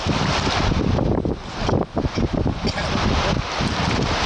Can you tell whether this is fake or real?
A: real